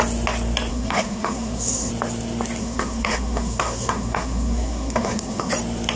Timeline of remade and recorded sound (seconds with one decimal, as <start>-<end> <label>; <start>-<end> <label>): 0.0-0.7 recorded; 0.7-1.9 remade; 1.9-2.6 recorded; 2.6-5.5 remade; 5.5-6.0 recorded